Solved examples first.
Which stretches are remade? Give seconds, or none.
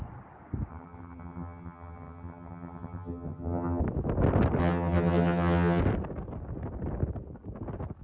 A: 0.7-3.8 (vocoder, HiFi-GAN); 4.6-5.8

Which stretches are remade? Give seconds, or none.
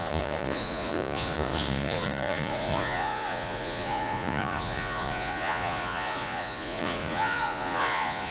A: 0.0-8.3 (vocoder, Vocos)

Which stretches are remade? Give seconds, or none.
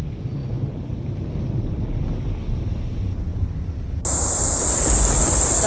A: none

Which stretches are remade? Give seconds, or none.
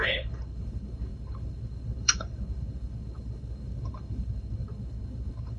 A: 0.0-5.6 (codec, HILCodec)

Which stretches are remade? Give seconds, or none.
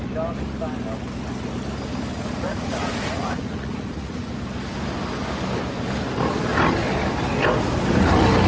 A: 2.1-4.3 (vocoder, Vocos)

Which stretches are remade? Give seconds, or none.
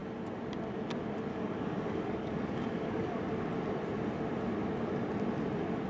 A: 1.3-3.2 (codec, DAC)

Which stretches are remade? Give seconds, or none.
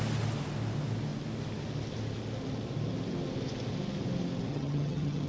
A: 4.5-5.3 (vocoder, HiFi-GAN)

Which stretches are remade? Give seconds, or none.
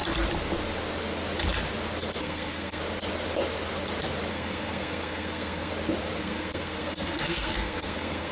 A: 2.2-2.8 (codec, SNAC); 4.3-5.7; 6.2-8.3